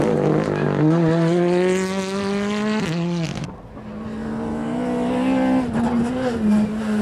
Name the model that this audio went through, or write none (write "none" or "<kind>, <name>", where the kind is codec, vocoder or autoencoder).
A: none